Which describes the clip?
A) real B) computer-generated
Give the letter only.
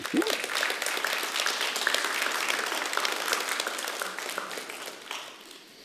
A